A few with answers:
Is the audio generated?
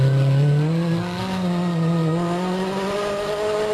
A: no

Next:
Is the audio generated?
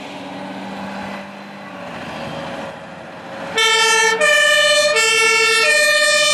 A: no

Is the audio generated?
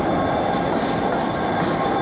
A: no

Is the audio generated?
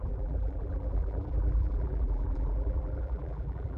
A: yes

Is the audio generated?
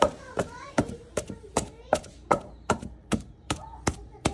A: yes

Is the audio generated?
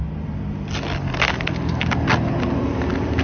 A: no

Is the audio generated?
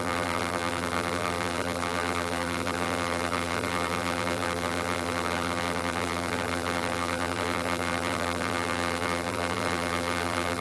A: yes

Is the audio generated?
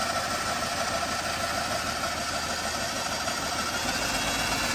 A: no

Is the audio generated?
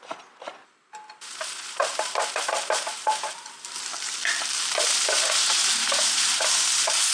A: no